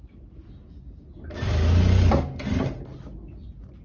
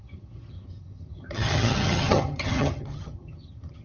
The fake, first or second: second